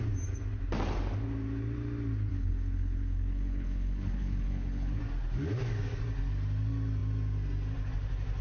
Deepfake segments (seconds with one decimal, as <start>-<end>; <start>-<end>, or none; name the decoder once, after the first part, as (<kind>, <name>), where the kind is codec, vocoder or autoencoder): 2.3-5.0 (codec, HILCodec)